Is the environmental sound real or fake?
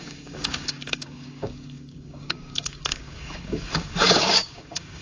fake